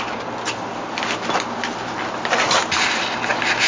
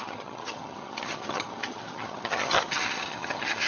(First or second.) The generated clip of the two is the second